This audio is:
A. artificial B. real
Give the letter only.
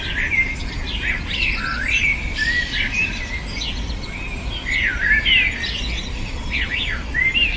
B